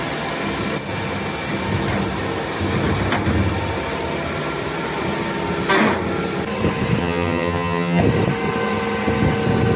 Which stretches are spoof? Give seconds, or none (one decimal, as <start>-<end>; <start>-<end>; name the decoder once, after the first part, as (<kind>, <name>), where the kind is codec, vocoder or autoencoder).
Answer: 7.0-8.0 (vocoder, HiFi-GAN)